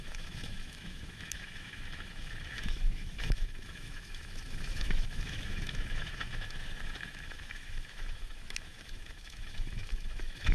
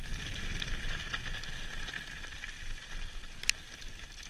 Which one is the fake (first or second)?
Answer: first